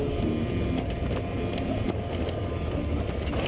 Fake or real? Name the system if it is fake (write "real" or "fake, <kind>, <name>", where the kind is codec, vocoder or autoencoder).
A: real